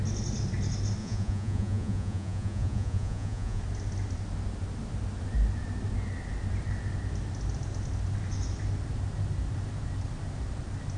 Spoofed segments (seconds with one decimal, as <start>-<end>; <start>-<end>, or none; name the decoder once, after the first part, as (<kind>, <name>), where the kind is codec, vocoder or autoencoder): 1.0-3.6 (vocoder, Vocos)